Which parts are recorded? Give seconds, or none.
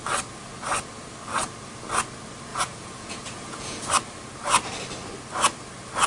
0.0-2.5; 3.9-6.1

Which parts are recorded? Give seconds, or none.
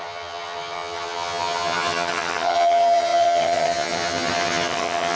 none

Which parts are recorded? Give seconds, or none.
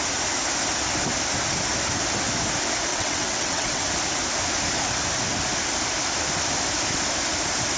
0.0-2.9; 3.8-7.8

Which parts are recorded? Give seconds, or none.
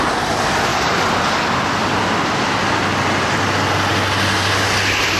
0.0-0.7; 1.4-5.2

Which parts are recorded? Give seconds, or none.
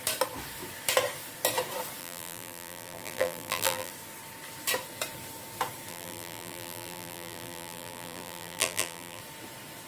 0.0-2.0; 3.9-5.9; 9.2-9.9